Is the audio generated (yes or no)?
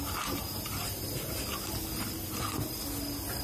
no